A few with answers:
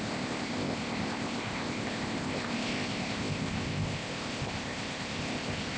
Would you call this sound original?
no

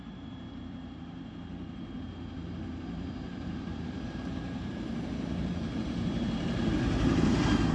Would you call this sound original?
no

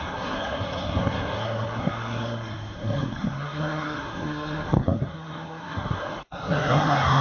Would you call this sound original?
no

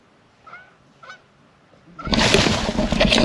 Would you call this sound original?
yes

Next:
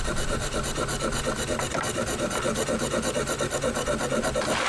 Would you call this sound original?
yes